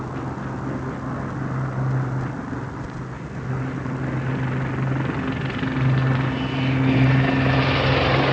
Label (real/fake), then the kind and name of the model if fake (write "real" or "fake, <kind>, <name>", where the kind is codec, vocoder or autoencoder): real